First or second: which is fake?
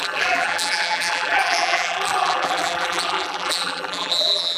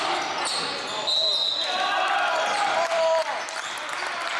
first